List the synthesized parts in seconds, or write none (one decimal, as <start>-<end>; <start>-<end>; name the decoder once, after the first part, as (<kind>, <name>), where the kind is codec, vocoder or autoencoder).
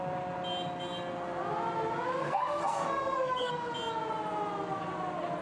2.2-3.5 (codec, SNAC)